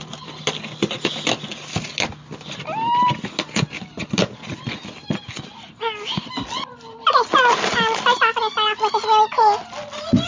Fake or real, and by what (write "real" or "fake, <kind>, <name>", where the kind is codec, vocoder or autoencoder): real